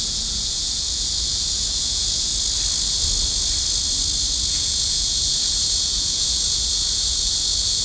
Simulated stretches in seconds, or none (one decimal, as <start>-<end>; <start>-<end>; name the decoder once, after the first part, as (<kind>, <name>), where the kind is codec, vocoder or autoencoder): 0.0-2.3 (vocoder, Vocos); 4.5-7.8